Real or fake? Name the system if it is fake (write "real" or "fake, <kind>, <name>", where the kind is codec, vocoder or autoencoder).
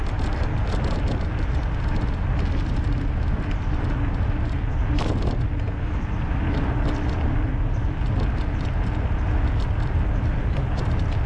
real